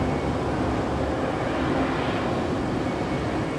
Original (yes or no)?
yes